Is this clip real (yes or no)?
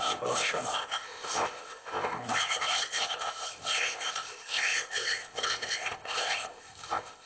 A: no